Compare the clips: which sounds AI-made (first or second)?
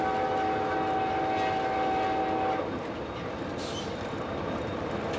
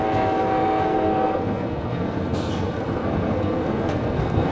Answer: second